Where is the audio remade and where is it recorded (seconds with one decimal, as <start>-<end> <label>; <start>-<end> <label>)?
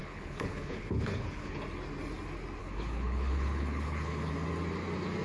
0.0-1.6 remade; 1.6-2.6 recorded; 2.6-4.3 remade; 4.3-5.2 recorded